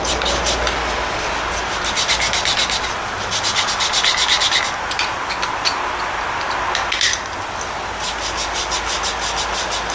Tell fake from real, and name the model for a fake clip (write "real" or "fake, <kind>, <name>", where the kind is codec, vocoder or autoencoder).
real